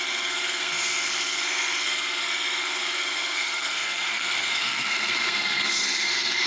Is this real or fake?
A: fake